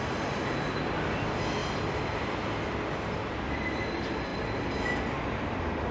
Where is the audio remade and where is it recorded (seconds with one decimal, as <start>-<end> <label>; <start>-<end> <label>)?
0.0-5.9 recorded